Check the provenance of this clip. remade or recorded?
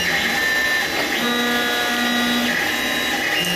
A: recorded